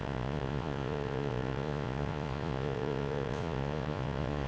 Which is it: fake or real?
fake